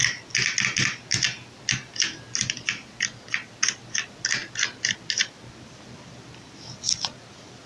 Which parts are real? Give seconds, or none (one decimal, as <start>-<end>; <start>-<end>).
0.0-7.7